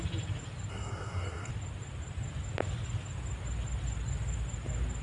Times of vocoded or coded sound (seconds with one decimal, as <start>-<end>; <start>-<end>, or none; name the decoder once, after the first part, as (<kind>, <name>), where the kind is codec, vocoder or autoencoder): 0.7-1.5 (codec, SNAC)